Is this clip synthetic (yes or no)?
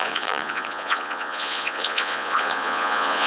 yes